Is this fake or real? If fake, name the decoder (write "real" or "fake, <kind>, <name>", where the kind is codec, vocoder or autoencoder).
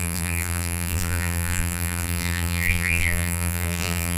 fake, vocoder, BigVGAN v2